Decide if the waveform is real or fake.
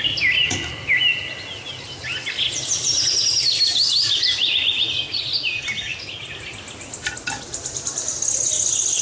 real